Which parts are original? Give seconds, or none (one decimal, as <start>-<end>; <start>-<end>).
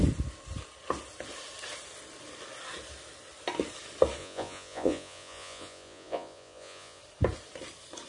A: 0.0-4.2; 7.0-8.1